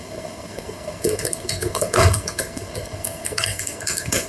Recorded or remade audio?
remade